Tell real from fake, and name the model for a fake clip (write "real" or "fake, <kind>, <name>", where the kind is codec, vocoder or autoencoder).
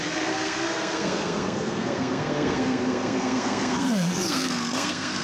fake, codec, SNAC